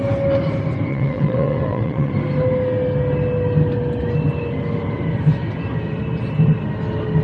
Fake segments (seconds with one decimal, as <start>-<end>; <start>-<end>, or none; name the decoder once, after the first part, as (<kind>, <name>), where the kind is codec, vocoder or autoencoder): 0.9-2.1 (vocoder, WaveNeXt)